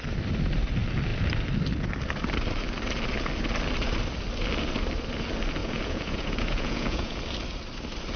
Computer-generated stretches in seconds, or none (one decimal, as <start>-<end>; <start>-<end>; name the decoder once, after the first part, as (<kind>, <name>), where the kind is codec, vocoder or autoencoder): 5.6-7.2 (vocoder, Vocos)

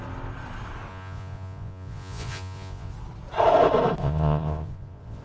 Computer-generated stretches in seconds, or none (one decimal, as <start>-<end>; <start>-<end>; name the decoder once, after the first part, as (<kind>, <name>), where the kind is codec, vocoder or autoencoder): 0.9-2.9 (vocoder, Vocos); 4.0-5.2

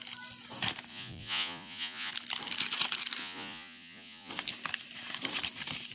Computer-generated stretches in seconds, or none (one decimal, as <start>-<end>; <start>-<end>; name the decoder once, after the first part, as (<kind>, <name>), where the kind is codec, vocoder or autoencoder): 0.9-2.1 (vocoder, Vocos); 3.2-4.3